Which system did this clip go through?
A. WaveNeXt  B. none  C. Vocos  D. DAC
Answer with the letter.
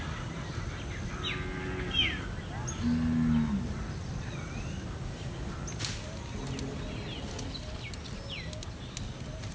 B